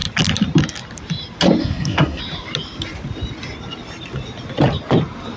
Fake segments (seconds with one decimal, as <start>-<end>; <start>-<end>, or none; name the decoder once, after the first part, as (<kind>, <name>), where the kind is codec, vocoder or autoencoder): 1.6-2.2 (codec, SNAC)